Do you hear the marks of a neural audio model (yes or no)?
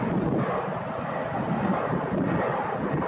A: no